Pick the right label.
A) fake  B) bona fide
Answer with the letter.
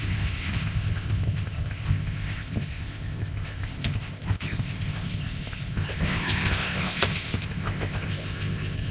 A